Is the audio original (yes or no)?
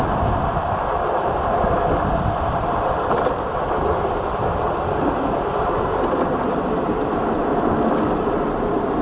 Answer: yes